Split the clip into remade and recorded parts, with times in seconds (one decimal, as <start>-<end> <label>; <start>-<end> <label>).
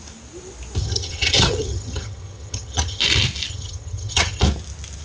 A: 0.0-0.8 recorded; 0.8-3.0 remade; 3.0-3.5 recorded; 3.5-4.4 remade; 4.4-5.0 recorded